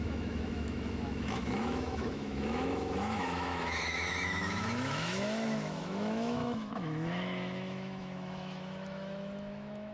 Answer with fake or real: fake